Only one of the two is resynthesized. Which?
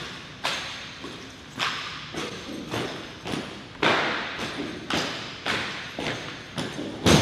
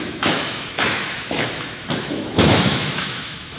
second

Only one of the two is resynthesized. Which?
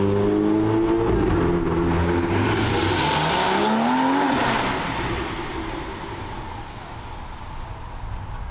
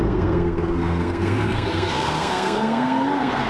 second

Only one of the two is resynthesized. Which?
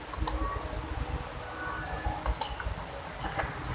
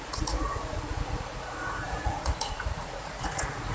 second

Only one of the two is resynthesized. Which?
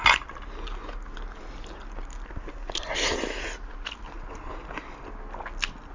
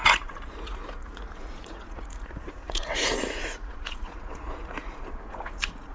second